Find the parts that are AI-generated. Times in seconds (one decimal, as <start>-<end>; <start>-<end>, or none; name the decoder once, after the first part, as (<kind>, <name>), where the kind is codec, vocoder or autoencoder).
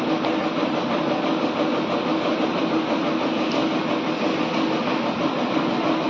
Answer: 0.4-2.6 (vocoder, BigVGAN v2)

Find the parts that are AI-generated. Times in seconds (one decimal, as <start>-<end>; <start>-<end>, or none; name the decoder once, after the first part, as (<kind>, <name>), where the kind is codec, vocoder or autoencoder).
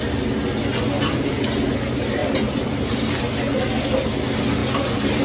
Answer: 2.2-3.1 (vocoder, BigVGAN v2)